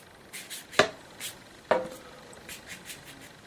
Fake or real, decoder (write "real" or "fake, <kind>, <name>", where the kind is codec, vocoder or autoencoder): real